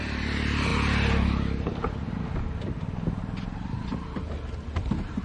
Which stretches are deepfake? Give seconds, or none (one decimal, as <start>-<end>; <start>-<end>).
0.0-5.2